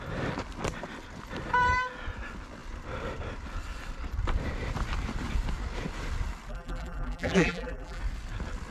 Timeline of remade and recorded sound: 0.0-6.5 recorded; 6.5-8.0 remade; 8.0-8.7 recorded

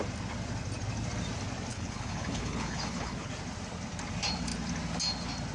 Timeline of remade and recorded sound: 0.0-1.7 recorded; 1.7-3.3 remade; 3.3-5.5 recorded

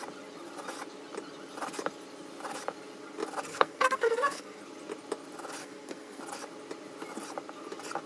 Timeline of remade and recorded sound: 0.0-3.5 recorded; 3.5-4.6 remade; 4.6-5.6 recorded; 5.6-6.2 remade; 6.2-8.1 recorded

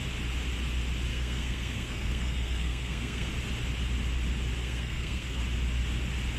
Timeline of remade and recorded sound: 0.0-1.1 recorded; 1.1-3.3 remade; 3.3-4.6 recorded; 4.6-5.4 remade; 5.4-6.4 recorded